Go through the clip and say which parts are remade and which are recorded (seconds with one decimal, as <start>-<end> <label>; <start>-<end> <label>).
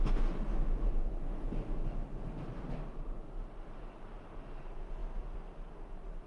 0.0-5.0 recorded; 5.0-6.3 remade